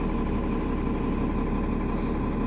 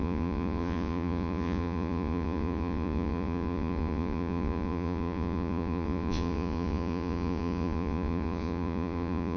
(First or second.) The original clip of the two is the first